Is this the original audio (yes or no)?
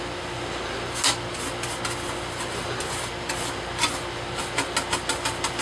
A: yes